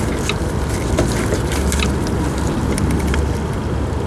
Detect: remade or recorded recorded